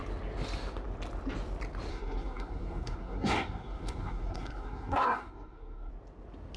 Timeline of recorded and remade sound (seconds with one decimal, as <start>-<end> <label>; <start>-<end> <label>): 0.0-1.9 recorded; 1.9-5.9 remade; 5.9-6.6 recorded